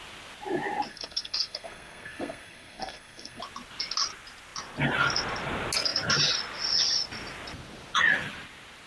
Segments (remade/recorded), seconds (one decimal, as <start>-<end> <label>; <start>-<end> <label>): 0.0-0.9 recorded; 0.9-3.4 remade; 3.4-8.9 recorded